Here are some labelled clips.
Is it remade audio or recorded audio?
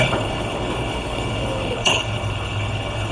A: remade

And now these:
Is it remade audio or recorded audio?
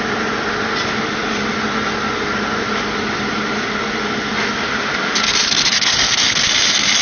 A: recorded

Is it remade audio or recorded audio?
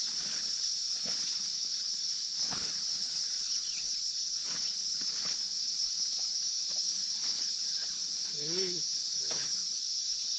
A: remade